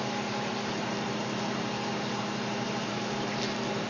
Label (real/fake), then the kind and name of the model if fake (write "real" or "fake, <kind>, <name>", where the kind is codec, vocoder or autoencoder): real